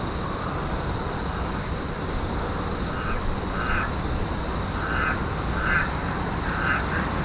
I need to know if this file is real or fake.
real